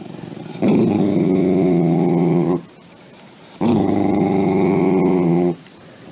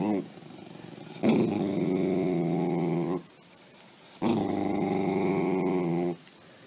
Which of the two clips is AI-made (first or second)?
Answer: first